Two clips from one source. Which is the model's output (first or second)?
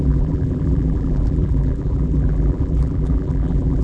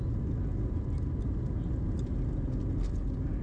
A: first